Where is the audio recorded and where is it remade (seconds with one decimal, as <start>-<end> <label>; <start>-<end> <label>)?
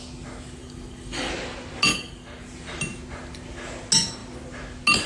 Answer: 0.0-0.6 recorded; 0.6-1.3 remade; 1.3-1.9 recorded; 1.9-2.4 remade; 2.4-5.1 recorded